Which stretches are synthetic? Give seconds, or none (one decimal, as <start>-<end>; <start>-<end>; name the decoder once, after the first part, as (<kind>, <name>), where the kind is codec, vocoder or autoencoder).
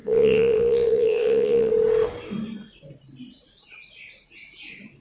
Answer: 0.0-1.7 (vocoder, WaveNeXt)